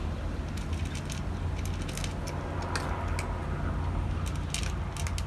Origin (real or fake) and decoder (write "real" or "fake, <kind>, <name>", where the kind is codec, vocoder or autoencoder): real